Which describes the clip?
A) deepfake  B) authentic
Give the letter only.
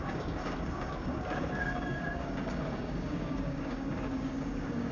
A